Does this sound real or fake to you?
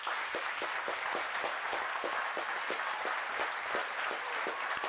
real